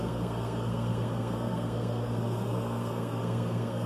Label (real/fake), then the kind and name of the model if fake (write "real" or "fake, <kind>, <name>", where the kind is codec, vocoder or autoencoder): fake, codec, SNAC